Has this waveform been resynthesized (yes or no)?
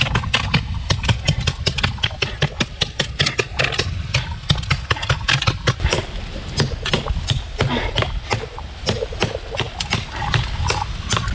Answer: no